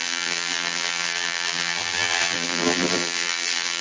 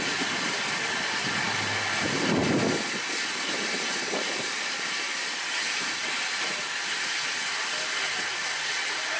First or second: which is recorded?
second